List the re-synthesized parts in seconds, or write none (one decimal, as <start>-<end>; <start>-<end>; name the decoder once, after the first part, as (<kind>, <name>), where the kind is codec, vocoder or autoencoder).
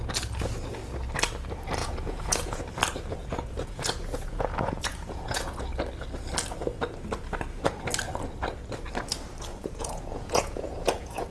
1.8-2.6 (vocoder, Vocos); 3.2-5.7; 9.5-11.3